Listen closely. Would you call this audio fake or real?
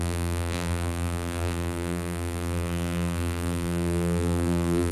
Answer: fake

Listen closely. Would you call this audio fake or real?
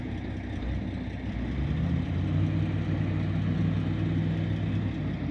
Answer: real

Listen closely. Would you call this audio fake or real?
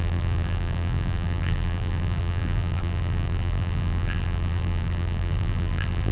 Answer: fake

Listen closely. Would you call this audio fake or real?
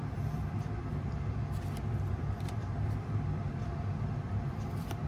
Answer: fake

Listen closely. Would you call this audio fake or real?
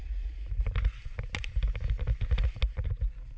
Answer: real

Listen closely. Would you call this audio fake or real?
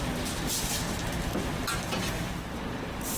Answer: fake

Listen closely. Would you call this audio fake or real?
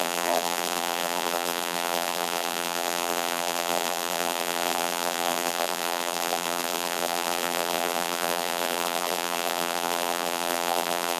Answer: fake